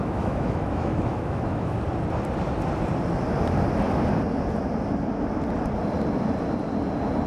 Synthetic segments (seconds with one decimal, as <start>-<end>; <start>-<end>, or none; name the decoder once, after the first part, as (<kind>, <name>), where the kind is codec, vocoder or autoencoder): 0.0-1.8 (autoencoder, DAC-VAE)